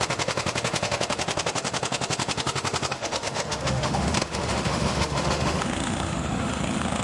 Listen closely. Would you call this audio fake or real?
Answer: fake